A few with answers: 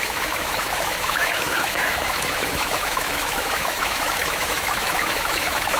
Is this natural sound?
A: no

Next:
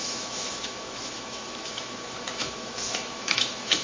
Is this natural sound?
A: no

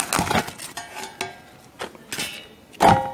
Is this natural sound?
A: yes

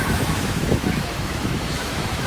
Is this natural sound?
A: no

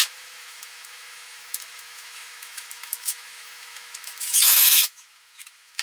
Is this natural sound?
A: no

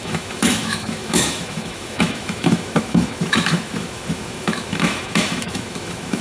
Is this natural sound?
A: no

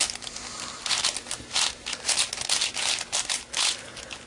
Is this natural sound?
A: yes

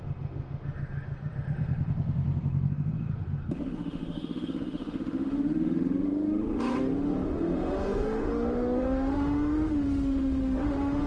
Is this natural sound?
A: no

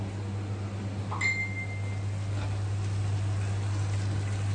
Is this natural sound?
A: yes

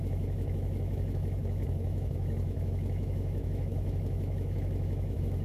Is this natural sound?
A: no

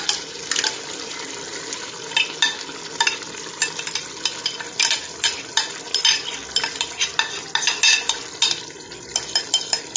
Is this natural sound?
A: yes